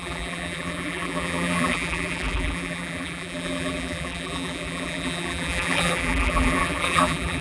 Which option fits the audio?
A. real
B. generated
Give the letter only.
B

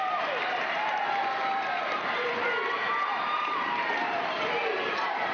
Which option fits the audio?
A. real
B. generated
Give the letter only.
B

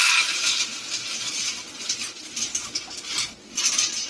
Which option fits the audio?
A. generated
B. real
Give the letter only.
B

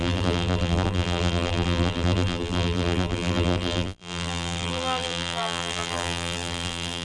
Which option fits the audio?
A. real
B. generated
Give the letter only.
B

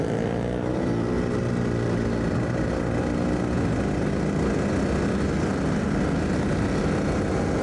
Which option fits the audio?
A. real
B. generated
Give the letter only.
A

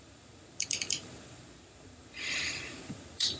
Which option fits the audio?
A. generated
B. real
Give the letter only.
A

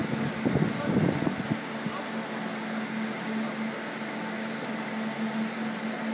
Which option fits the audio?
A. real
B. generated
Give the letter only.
A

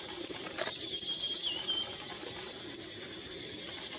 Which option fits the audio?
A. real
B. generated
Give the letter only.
A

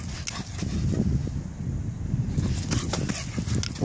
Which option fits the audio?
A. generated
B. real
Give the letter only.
B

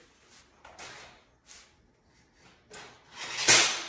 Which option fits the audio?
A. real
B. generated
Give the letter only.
A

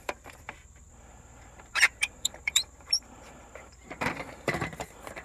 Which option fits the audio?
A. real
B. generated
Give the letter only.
B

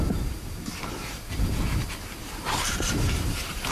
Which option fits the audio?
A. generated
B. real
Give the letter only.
A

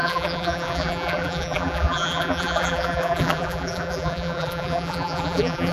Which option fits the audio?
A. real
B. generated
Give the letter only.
B